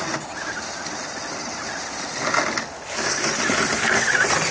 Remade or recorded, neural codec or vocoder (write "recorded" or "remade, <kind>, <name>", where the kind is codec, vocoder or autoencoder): recorded